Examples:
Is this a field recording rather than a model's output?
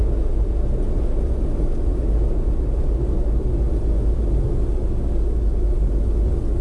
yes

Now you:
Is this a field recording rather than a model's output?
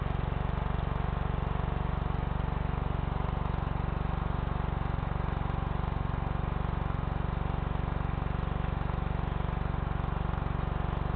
yes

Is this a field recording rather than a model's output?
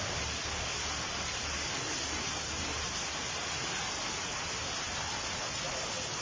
yes